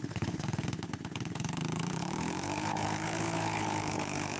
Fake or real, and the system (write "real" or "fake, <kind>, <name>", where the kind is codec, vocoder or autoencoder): fake, codec, HILCodec